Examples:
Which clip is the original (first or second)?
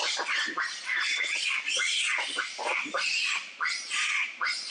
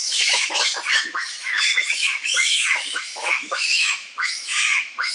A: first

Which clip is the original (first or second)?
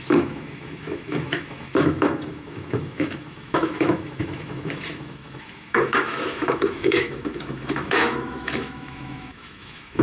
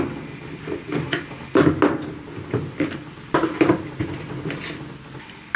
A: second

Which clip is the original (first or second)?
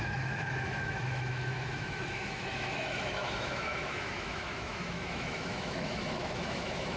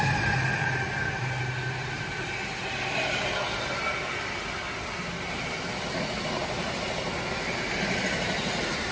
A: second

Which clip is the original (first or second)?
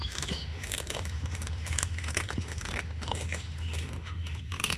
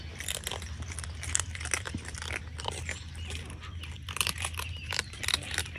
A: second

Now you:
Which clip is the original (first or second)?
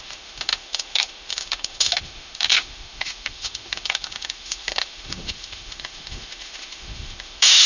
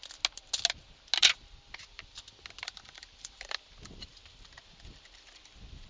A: second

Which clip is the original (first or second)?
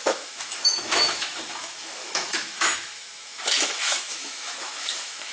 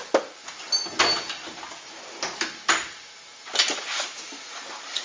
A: second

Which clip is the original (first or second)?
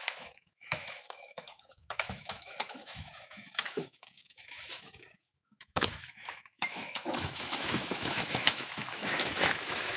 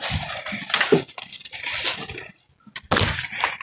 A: second